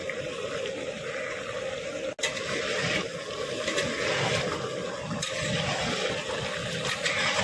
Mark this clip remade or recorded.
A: recorded